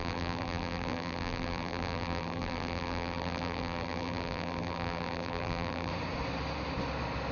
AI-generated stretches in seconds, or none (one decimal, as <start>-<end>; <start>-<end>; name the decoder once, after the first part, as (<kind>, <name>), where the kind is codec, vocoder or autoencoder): 0.0-5.9 (vocoder, BigVGAN v2)